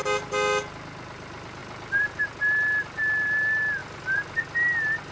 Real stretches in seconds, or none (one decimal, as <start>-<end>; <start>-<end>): 0.0-1.6; 2.2-3.8; 4.4-5.1